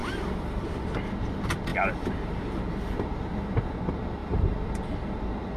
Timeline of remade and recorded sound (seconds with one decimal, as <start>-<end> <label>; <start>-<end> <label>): 0.0-0.6 remade; 0.6-1.7 recorded; 1.7-2.6 remade; 2.6-4.2 recorded; 4.2-5.6 remade